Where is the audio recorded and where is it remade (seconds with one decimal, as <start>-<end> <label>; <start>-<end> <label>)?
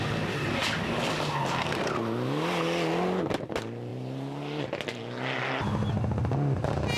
0.0-7.0 recorded